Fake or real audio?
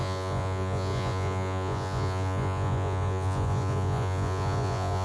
fake